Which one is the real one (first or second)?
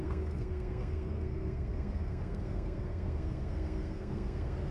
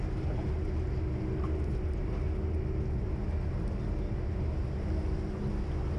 second